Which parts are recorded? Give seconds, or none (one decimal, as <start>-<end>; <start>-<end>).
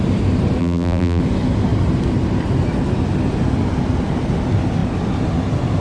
0.0-0.6; 1.2-5.8